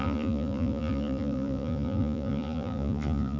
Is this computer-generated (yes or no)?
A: yes